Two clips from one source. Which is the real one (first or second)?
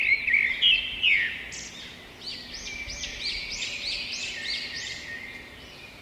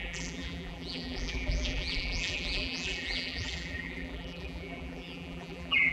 first